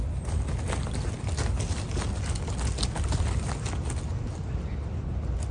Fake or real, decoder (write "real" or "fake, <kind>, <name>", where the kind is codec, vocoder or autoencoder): real